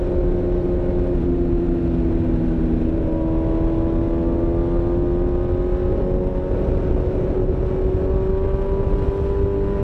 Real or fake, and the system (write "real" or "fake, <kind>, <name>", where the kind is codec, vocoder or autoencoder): real